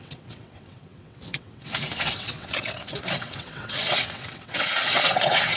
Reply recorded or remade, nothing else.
remade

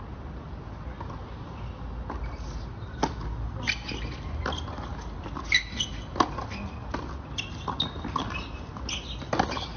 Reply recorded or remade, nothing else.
recorded